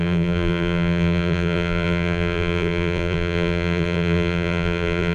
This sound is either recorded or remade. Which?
remade